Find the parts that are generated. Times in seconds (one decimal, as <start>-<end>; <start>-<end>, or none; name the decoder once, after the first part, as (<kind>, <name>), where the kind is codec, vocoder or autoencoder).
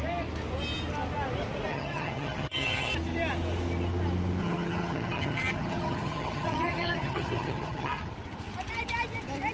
1.7-2.9 (vocoder, HiFi-GAN); 4.4-8.1